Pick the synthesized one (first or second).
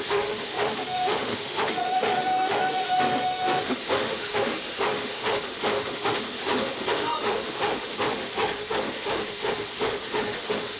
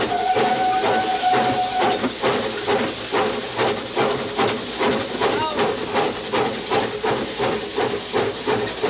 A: first